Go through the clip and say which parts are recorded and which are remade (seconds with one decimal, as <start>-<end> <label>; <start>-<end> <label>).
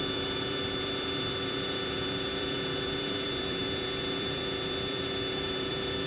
0.0-6.1 remade